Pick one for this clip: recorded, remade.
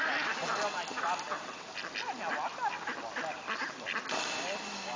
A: recorded